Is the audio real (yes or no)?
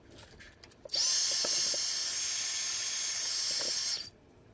yes